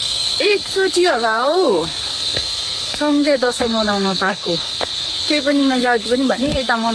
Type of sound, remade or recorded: remade